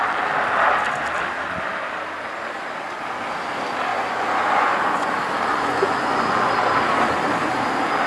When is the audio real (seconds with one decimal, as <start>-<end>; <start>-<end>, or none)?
0.0-3.9; 5.1-5.5; 6.5-8.1